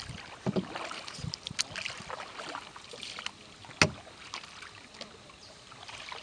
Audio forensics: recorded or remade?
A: recorded